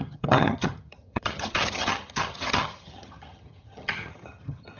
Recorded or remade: remade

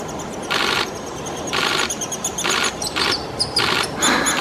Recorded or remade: recorded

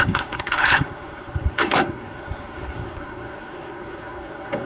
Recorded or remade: remade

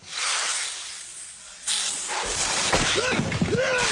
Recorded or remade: recorded